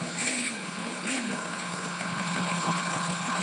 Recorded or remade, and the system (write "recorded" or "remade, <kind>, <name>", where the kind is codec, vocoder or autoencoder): remade, codec, HILCodec